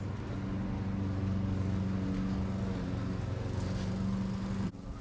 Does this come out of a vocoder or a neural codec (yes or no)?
no